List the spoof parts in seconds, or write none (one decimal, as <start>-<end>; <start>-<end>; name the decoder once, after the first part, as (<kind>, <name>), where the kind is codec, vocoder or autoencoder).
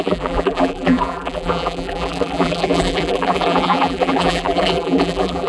0.0-5.5 (vocoder, BigVGAN v2)